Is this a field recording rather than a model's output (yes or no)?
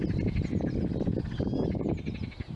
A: yes